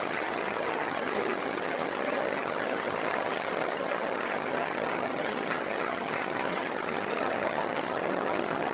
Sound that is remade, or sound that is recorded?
remade